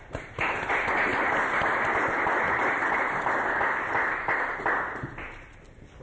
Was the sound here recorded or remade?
recorded